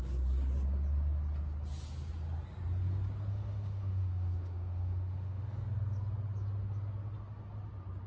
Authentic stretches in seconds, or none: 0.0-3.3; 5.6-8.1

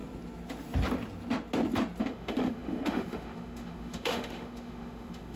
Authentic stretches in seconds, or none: 0.0-2.0

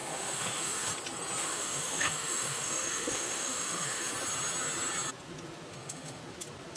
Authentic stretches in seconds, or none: 0.9-1.4; 4.1-5.7; 6.2-6.8

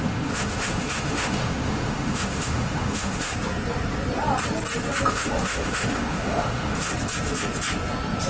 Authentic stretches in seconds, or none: 3.3-5.1; 6.9-8.3

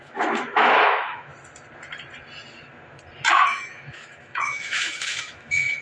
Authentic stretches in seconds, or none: 1.3-3.3

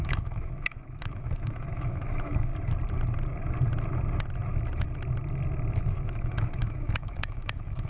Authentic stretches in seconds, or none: 2.5-5.8

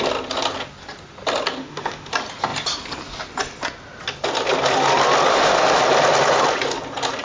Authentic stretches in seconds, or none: 0.0-1.6; 2.1-5.3; 5.8-7.2

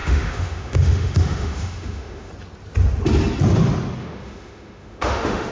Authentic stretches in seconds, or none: 2.3-4.0